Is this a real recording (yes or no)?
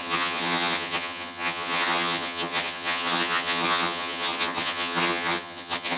no